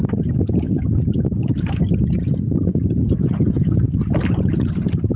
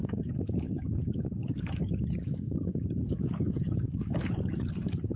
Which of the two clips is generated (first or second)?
second